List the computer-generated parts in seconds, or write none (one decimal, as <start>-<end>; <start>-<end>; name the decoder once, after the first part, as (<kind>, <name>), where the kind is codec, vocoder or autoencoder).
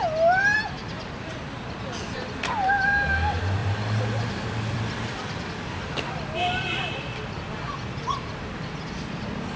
0.8-1.6 (vocoder, BigVGAN v2); 3.6-5.6